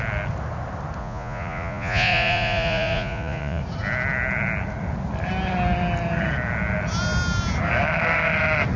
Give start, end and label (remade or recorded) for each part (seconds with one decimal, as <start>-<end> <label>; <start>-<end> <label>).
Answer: 0.0-1.0 recorded; 1.0-3.6 remade; 3.6-8.8 recorded